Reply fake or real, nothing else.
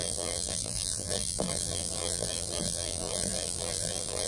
fake